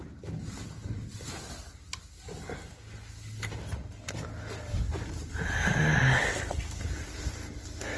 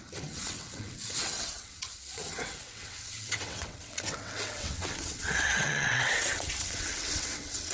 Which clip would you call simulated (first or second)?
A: second